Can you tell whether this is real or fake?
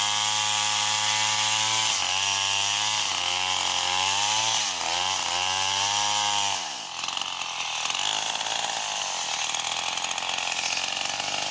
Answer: real